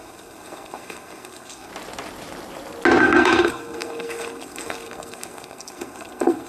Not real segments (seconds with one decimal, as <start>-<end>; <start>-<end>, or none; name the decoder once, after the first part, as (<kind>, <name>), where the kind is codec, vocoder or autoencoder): 0.0-1.7 (codec, SNAC); 3.0-6.5